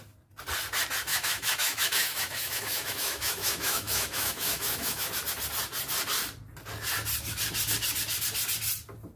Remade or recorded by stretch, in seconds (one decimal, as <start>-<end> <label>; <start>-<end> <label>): 0.0-1.1 recorded; 1.1-5.1 remade; 5.1-9.2 recorded